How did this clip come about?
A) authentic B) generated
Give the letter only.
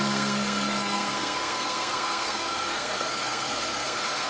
B